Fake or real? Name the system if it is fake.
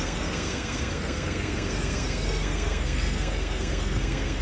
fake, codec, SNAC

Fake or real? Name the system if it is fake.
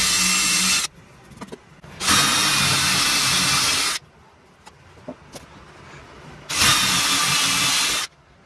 real